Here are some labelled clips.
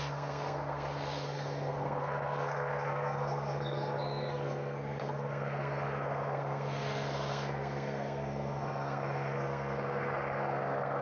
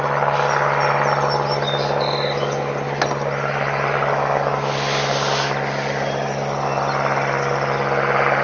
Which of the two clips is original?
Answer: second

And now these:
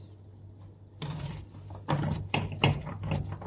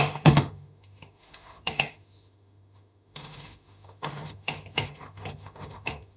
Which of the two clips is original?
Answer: first